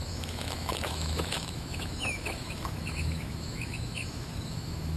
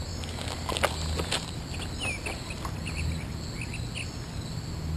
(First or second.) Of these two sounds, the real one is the second